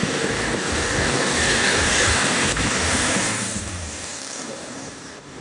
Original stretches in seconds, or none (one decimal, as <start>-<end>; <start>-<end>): none